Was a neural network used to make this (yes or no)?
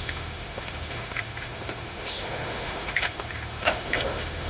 yes